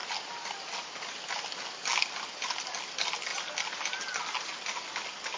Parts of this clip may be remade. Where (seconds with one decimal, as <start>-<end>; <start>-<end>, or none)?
none